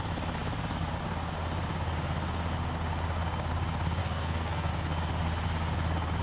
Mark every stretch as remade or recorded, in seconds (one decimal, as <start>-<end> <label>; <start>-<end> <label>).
0.0-4.0 recorded; 4.0-4.7 remade; 4.7-6.2 recorded